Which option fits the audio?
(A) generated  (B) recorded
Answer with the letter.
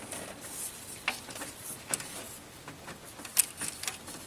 B